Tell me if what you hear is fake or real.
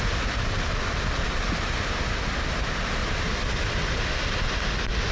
real